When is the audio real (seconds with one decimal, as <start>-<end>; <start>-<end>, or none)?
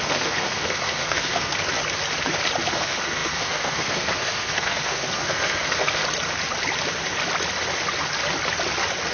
1.5-2.7; 6.0-9.1